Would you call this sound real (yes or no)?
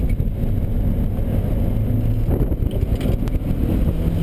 yes